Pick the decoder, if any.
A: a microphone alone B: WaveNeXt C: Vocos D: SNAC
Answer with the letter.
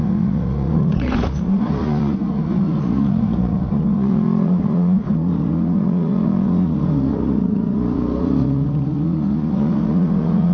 C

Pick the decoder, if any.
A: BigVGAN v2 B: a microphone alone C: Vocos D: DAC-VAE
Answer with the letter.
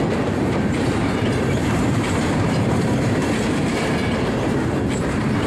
A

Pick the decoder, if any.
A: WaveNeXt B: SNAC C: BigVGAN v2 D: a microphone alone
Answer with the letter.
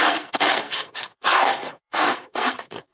B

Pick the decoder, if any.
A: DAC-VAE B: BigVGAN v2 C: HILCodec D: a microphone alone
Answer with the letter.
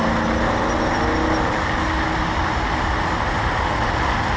D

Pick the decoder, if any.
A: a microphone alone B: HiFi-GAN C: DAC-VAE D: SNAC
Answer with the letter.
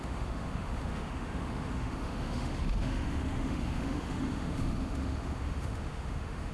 C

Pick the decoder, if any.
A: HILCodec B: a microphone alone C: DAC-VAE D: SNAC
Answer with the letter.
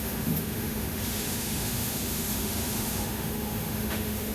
C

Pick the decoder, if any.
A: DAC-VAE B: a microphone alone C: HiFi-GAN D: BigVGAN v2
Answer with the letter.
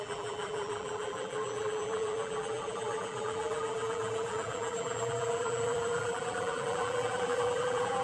D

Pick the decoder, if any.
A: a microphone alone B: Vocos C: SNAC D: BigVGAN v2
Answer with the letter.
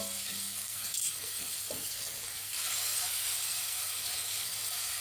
C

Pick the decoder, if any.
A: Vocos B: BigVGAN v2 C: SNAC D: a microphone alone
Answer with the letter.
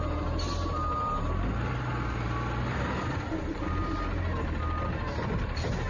D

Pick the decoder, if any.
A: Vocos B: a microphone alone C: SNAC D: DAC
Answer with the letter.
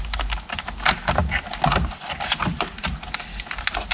B